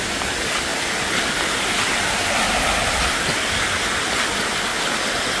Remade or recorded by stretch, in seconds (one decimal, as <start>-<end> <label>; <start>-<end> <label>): 0.0-5.4 recorded